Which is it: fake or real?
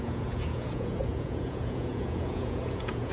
fake